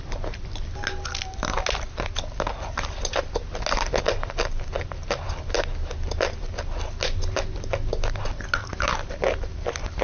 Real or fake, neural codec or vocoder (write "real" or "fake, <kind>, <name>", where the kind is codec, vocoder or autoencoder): real